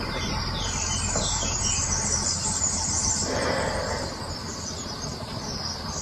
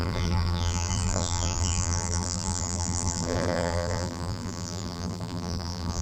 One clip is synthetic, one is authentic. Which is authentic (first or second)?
first